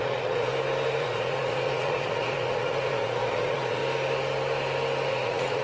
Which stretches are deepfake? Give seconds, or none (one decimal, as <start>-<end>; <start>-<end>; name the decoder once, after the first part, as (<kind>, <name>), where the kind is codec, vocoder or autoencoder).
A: 0.0-0.5 (vocoder, Vocos); 1.0-3.8; 5.1-5.6